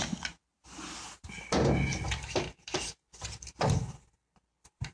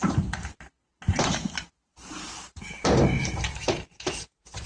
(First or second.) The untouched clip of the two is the first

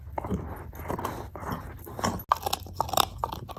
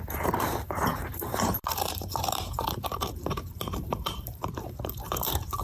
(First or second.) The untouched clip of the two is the first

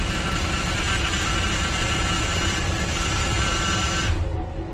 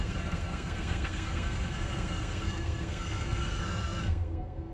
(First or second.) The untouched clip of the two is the first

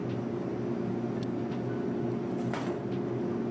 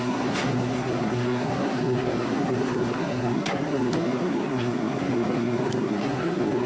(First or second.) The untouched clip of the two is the first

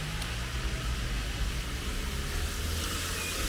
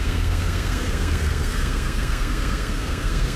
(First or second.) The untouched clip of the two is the first